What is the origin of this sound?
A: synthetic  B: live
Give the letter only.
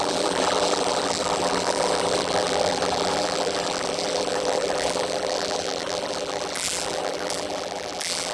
A